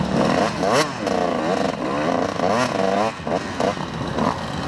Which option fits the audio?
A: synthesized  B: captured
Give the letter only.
B